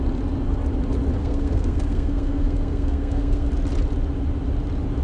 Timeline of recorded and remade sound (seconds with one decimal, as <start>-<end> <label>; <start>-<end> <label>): 0.0-1.2 recorded; 1.2-3.5 remade; 3.5-5.0 recorded